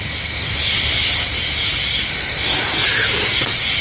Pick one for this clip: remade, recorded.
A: recorded